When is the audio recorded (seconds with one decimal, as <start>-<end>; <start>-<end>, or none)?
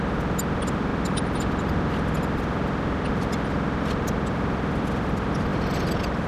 0.0-6.3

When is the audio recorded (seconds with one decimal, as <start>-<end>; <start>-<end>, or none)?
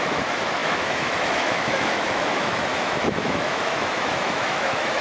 none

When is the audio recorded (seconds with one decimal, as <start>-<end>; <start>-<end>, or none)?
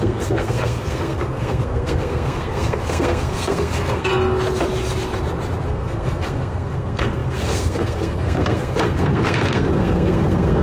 4.1-5.7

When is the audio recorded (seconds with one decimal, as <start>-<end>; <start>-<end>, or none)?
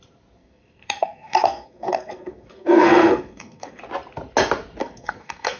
0.0-0.4; 3.8-4.8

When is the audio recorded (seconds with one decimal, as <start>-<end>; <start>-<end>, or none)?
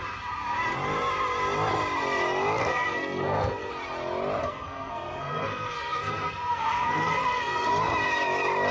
0.0-2.6; 3.7-4.4; 7.7-8.7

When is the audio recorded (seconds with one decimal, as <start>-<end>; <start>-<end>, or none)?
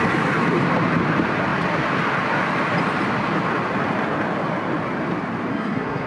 0.0-5.5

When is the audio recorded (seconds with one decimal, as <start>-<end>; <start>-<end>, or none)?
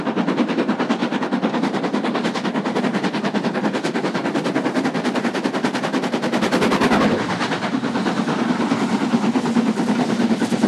0.0-10.7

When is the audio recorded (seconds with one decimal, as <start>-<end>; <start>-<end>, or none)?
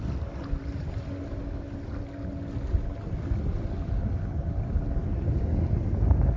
0.0-6.4